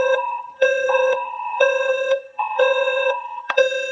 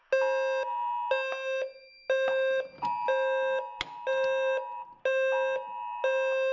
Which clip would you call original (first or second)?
second